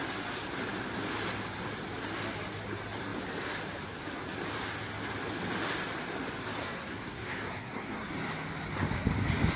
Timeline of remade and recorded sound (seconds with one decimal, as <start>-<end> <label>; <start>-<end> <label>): 0.0-6.6 recorded; 6.6-8.1 remade; 8.1-9.6 recorded